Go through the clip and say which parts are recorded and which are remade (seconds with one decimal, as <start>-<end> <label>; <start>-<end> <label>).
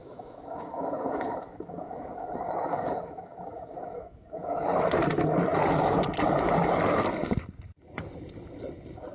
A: 0.0-4.7 remade; 4.7-9.1 recorded